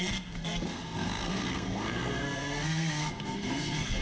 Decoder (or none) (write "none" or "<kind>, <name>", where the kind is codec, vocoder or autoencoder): codec, SNAC